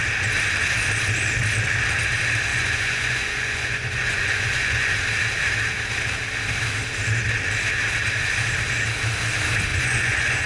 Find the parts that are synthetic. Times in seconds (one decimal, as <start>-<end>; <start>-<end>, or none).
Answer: 2.5-4.9; 9.7-10.5